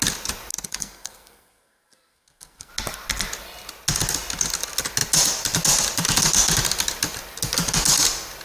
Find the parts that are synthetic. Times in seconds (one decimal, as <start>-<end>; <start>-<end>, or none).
0.7-2.7